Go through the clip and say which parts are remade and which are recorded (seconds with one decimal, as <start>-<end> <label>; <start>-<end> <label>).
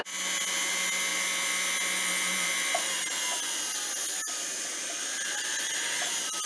0.0-6.5 recorded